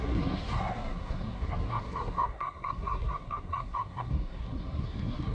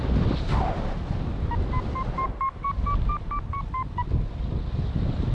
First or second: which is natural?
second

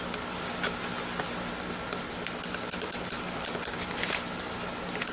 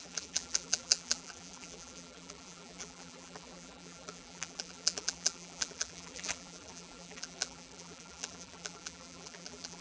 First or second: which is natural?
first